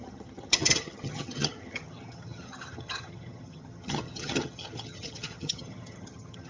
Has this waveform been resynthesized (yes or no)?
yes